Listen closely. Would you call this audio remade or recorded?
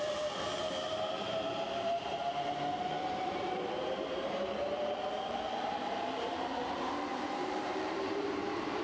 remade